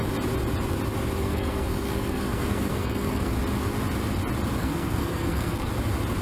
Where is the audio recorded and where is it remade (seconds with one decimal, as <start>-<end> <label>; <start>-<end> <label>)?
0.0-1.2 recorded; 1.2-3.3 remade; 3.3-4.6 recorded; 4.6-5.7 remade; 5.7-6.2 recorded